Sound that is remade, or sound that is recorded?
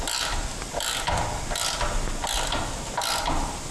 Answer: recorded